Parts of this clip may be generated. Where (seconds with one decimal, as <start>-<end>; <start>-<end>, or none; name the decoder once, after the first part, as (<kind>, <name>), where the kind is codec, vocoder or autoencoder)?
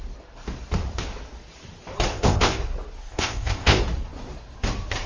2.1-2.6 (codec, ZipCodec); 3.0-3.8